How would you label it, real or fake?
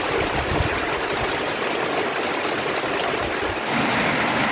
real